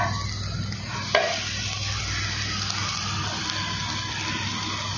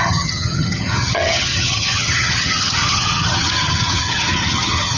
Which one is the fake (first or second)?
second